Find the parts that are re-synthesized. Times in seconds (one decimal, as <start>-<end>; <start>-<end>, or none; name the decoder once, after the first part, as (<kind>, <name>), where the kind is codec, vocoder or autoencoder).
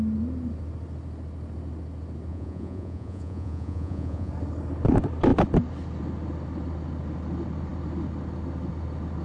2.3-4.3 (vocoder, Vocos)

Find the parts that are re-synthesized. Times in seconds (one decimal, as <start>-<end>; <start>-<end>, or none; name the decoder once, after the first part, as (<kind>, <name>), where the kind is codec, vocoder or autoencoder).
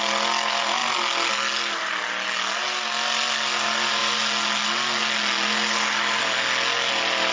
none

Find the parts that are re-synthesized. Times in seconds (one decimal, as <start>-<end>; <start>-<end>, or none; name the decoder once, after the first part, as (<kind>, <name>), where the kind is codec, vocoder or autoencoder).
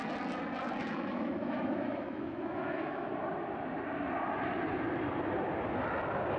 0.8-3.1 (autoencoder, DAC-VAE)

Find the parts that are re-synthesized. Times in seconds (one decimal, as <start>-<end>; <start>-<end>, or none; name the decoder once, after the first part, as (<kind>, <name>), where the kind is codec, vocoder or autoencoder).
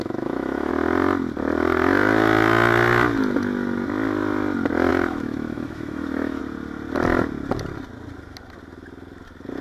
0.0-0.7 (autoencoder, DAC-VAE); 4.9-6.4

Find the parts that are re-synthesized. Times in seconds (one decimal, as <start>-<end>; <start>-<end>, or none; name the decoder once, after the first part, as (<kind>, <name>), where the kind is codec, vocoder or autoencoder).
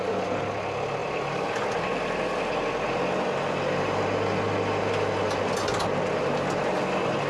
none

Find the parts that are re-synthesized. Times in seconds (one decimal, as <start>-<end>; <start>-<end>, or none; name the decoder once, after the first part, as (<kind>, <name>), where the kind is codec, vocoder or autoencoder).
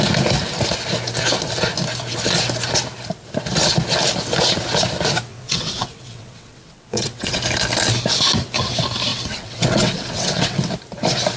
5.3-7.4 (vocoder, WaveNeXt); 9.1-10.7